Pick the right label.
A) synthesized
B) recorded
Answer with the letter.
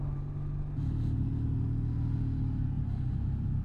B